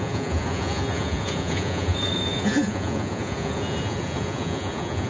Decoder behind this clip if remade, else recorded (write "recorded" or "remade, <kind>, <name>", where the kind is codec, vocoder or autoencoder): remade, vocoder, Vocos